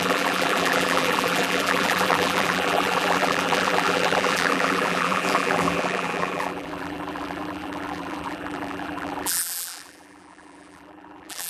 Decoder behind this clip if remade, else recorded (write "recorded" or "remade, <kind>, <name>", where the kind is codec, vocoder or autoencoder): remade, vocoder, BigVGAN v2